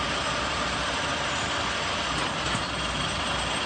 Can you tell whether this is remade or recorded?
recorded